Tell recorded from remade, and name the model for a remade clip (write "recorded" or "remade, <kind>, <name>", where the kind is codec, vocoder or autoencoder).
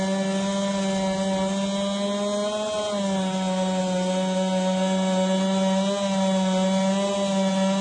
recorded